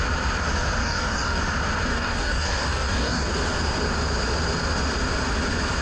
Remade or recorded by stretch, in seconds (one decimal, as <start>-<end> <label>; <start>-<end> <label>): 0.0-0.8 recorded; 0.8-1.4 remade; 1.4-1.9 recorded; 1.9-3.3 remade; 3.3-5.8 recorded

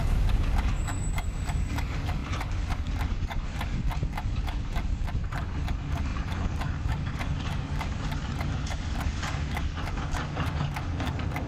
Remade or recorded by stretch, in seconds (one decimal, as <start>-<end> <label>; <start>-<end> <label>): 0.0-11.5 remade

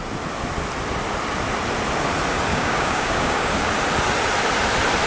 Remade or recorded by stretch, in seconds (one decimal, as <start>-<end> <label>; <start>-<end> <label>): 0.0-2.5 recorded; 2.5-3.7 remade; 3.7-5.1 recorded

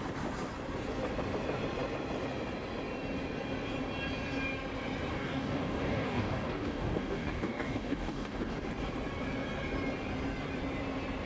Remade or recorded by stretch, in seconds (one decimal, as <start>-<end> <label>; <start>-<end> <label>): 0.0-5.1 recorded; 5.1-8.6 remade; 8.6-11.3 recorded

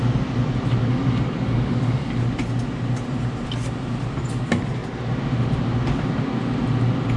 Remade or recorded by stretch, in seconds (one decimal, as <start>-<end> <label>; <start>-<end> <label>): 0.0-0.9 recorded; 0.9-2.2 remade; 2.2-7.2 recorded